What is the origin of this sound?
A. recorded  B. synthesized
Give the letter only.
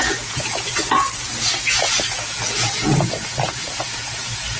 B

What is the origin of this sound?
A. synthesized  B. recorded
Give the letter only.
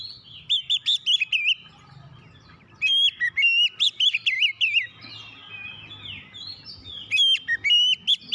B